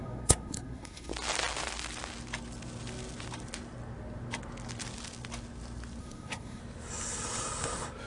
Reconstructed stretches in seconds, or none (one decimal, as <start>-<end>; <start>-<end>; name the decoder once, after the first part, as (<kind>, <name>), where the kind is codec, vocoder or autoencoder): 0.0-1.1 (codec, SNAC); 6.0-6.6